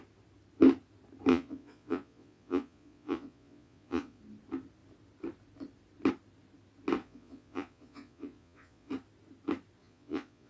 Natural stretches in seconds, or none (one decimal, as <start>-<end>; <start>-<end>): 0.0-1.3; 4.2-7.0; 8.9-9.8